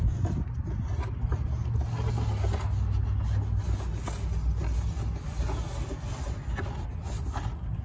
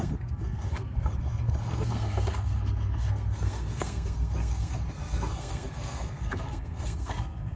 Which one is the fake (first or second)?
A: second